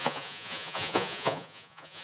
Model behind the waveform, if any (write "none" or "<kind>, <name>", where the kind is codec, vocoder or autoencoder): vocoder, Vocos